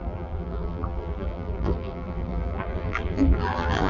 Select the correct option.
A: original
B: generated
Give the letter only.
B